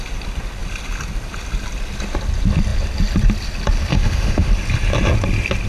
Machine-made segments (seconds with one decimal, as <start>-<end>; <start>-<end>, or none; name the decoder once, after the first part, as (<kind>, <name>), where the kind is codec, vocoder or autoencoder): 3.9-4.5 (autoencoder, DAC-VAE)